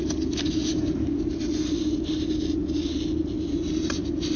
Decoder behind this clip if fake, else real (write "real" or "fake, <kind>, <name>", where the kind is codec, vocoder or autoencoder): real